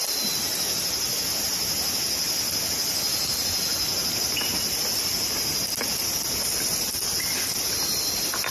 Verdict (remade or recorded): recorded